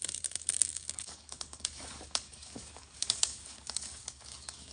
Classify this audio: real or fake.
fake